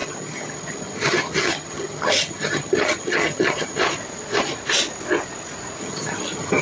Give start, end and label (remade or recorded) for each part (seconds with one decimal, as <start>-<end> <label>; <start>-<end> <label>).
0.0-3.8 remade; 3.8-5.8 recorded; 5.8-6.6 remade